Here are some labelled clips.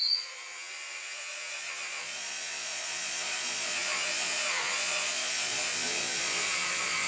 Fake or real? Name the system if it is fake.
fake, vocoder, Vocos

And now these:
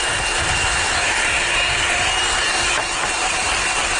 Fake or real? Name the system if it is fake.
real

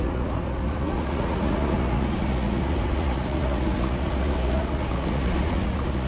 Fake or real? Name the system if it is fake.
fake, vocoder, Vocos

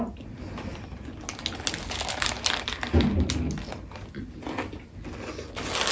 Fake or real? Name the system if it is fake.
real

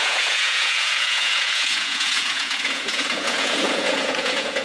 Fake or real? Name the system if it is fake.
fake, vocoder, Vocos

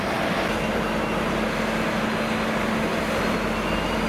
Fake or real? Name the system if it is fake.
real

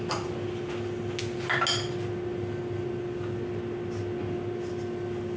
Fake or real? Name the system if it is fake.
real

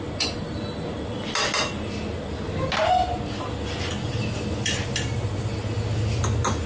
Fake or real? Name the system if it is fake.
real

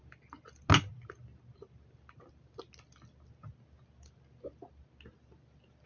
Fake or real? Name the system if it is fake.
real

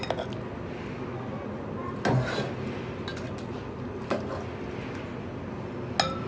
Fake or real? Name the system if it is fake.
real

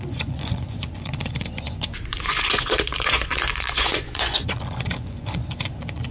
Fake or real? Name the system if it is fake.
fake, vocoder, Vocos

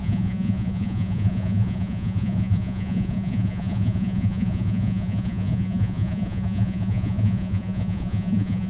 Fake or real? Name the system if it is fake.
fake, vocoder, Vocos